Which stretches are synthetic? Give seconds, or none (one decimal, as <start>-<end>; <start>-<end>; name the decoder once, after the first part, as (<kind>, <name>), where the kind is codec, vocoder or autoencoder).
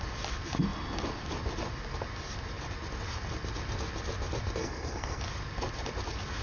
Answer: 4.6-5.2 (codec, SNAC)